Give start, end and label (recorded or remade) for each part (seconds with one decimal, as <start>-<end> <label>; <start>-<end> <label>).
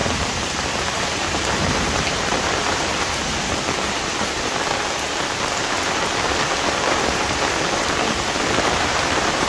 0.0-2.9 remade; 2.9-6.8 recorded; 6.8-9.5 remade